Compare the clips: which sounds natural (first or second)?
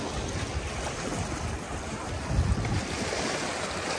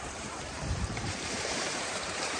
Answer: first